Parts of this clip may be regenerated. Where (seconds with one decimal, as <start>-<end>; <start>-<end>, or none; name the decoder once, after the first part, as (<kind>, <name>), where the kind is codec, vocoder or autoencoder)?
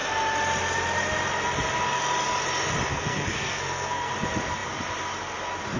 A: 2.9-4.1 (codec, SNAC)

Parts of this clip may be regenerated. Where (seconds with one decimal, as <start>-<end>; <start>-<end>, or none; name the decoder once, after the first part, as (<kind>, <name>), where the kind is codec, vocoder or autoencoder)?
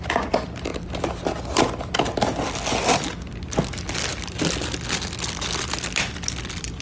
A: none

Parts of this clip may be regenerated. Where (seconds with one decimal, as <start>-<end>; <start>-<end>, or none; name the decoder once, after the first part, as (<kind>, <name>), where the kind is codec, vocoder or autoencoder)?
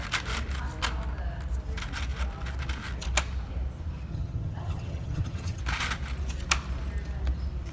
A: 4.1-5.6 (vocoder, HiFi-GAN)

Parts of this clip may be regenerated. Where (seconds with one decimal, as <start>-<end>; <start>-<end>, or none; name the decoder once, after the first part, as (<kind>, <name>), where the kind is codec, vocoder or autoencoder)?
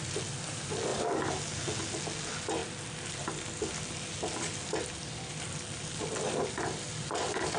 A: none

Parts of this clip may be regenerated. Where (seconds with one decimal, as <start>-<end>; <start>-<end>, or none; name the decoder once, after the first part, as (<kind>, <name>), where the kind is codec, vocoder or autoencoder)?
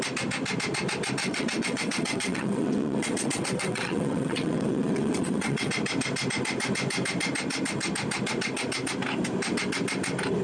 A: 1.2-5.7 (vocoder, WaveNeXt)